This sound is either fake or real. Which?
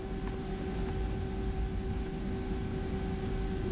real